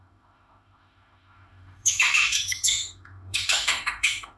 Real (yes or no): no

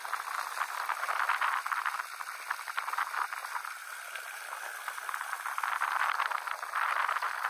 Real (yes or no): yes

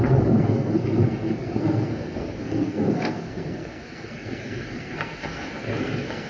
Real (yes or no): no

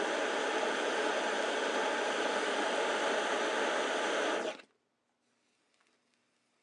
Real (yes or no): no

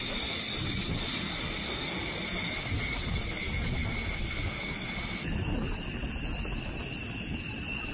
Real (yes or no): yes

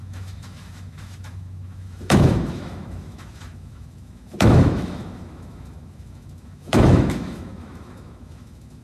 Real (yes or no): no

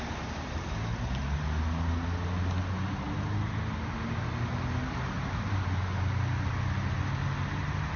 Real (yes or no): yes